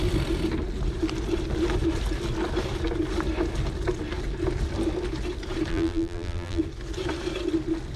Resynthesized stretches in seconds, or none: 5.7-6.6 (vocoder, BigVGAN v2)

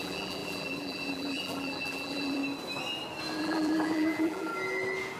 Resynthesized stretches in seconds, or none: 0.0-2.4 (vocoder, BigVGAN v2); 3.4-4.5

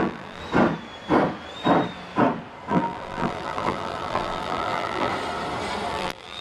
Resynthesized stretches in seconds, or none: 0.0-0.4 (vocoder, BigVGAN v2); 2.7-5.1; 5.9-6.4

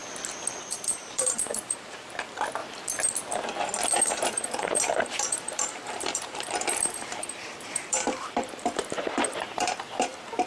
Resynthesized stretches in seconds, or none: 0.6-2.6 (vocoder, BigVGAN v2); 3.9-10.5

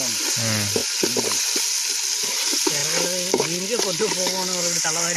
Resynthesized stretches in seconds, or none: none